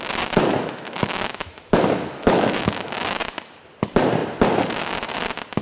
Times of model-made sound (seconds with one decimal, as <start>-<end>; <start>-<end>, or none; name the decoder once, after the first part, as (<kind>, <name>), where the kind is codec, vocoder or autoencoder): 0.6-3.6 (autoencoder, DAC-VAE)